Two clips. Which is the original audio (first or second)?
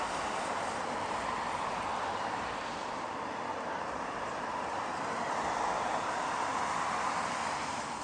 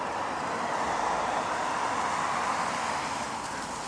second